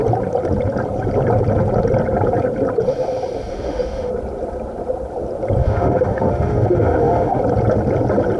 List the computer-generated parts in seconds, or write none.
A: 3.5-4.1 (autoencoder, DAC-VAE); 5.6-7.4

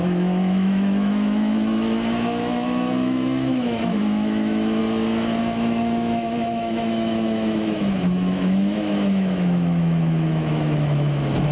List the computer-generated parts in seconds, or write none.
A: 0.0-4.8 (autoencoder, DAC-VAE); 5.4-11.5

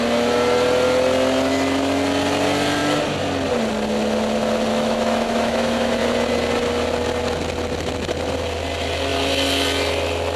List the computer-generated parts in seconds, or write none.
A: 4.7-6.0 (autoencoder, DAC-VAE)